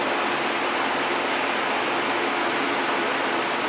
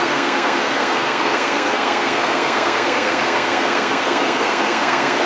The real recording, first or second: first